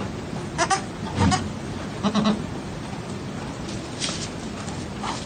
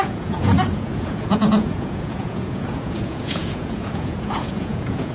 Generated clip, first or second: second